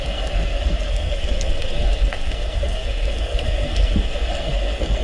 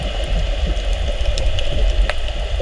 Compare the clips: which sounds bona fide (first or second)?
second